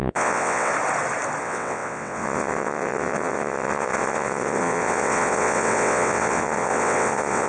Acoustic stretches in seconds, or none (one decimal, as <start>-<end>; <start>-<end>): 0.7-1.4